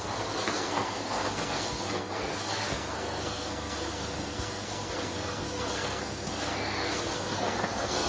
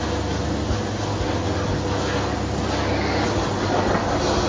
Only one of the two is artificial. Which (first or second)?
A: first